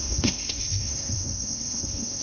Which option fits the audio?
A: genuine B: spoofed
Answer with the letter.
B